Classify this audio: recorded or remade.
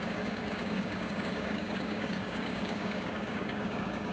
remade